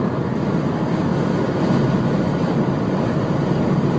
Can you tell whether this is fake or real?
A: real